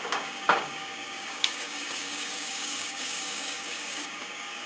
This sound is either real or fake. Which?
fake